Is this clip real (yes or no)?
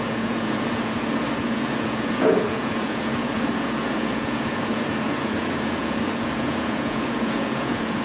no